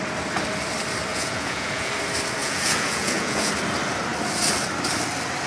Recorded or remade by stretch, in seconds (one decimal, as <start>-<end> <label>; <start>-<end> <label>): 0.0-1.1 recorded; 1.1-1.9 remade; 1.9-2.4 recorded; 2.4-3.5 remade; 3.5-5.5 recorded